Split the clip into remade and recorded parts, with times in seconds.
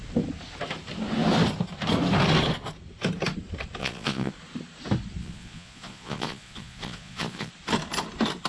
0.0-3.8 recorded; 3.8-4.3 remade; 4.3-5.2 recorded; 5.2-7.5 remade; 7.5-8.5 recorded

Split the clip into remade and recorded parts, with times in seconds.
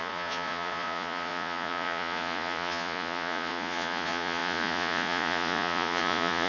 0.0-6.5 remade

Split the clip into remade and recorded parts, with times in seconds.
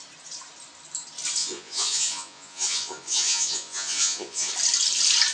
0.0-1.4 recorded; 1.4-4.5 remade; 4.5-5.3 recorded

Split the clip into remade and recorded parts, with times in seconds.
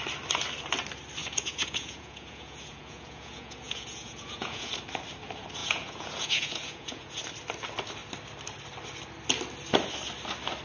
0.0-1.2 recorded; 1.2-4.7 remade; 4.7-5.6 recorded; 5.6-7.2 remade; 7.2-10.6 recorded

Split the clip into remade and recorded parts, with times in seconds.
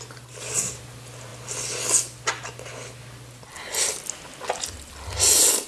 0.0-5.7 recorded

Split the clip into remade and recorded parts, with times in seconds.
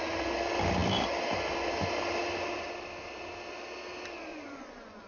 0.0-4.3 recorded; 4.3-5.1 remade